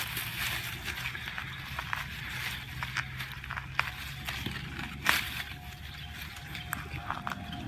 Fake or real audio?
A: real